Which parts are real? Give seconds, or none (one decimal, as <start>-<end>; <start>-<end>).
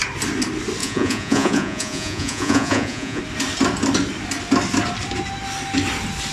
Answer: 0.0-0.8; 3.2-6.3